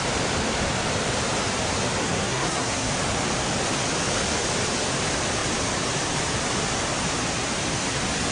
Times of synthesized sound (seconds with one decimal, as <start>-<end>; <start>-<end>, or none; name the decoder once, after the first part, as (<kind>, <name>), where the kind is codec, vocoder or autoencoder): 2.0-2.9 (codec, SNAC)